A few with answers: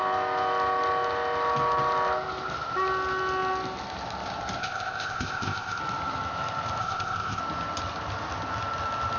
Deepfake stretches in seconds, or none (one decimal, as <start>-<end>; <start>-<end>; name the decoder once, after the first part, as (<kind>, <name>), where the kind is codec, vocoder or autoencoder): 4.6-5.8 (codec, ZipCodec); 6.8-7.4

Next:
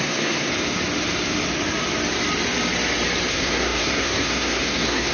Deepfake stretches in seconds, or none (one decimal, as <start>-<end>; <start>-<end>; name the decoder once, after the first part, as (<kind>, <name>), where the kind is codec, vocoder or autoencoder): 0.0-0.5 (codec, SNAC); 3.3-5.1

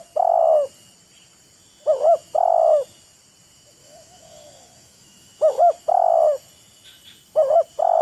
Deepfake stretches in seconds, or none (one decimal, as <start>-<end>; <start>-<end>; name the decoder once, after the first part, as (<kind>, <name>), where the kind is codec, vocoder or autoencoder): 3.8-5.6 (autoencoder, DAC-VAE)

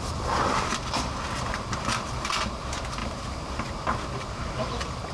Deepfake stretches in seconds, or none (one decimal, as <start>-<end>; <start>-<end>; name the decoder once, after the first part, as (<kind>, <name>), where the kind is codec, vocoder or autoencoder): 3.0-3.7 (vocoder, BigVGAN v2)